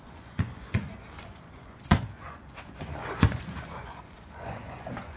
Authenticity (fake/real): fake